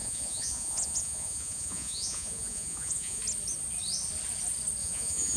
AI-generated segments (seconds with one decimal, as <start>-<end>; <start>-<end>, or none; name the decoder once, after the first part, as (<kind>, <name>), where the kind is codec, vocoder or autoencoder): 0.0-3.2 (vocoder, Vocos); 4.8-5.4